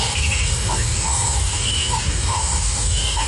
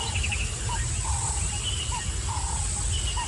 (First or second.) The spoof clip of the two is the first